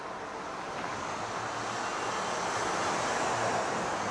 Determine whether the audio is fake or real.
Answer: real